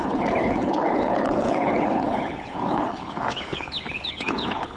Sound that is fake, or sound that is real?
fake